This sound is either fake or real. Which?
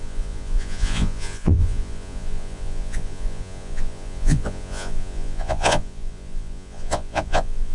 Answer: fake